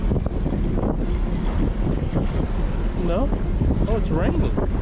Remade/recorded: recorded